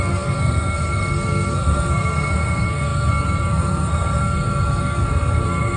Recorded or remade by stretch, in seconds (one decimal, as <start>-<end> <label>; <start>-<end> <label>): 0.0-5.8 remade